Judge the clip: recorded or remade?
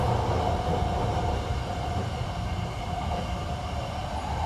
recorded